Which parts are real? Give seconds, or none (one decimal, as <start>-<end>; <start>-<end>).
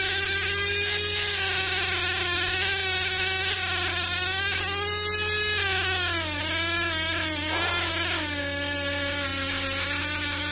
0.0-10.5